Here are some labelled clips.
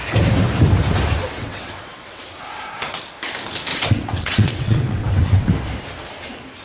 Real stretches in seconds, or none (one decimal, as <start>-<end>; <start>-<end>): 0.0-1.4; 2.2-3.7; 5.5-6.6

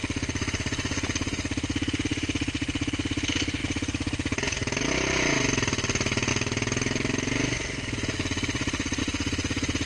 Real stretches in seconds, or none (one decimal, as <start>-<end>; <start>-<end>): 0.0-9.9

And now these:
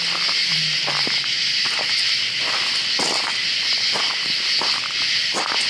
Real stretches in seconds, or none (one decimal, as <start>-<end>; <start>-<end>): 0.0-3.4; 4.0-5.7

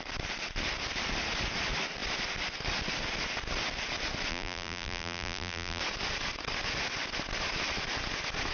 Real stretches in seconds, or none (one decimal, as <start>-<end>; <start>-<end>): 0.0-4.3; 5.8-8.5